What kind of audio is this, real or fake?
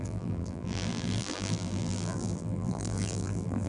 fake